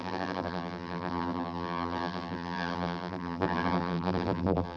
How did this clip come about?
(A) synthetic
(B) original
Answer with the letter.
A